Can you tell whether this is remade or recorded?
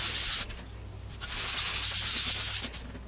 recorded